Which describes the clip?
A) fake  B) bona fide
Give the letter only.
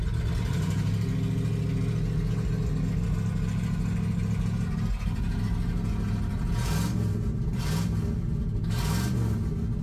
B